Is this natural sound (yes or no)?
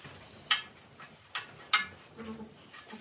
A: yes